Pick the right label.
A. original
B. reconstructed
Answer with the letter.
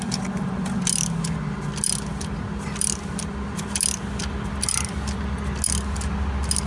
A